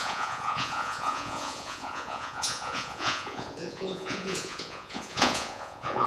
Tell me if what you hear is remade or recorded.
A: remade